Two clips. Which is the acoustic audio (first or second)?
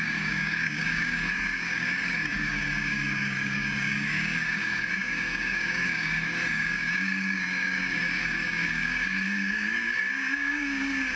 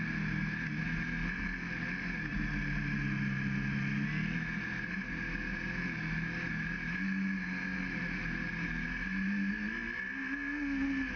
second